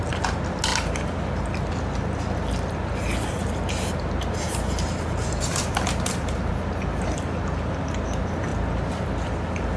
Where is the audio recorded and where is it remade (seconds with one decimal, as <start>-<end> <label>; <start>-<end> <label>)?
0.0-3.4 recorded; 3.4-6.5 remade; 6.5-9.8 recorded